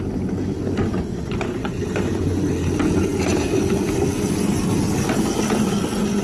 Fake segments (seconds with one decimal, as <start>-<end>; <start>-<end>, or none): 0.9-2.5